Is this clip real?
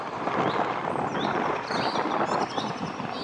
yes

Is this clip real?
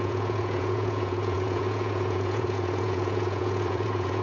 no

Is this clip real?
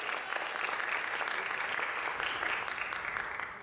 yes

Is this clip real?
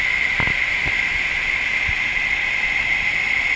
yes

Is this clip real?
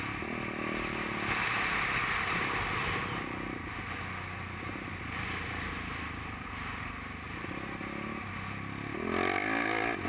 yes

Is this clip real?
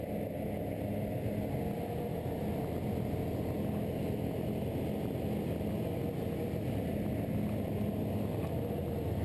yes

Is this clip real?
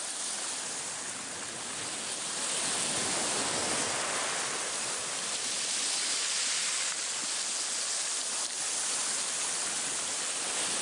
yes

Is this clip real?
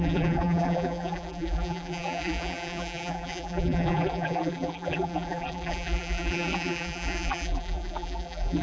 no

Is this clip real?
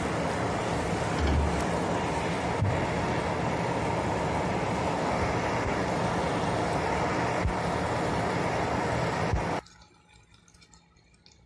yes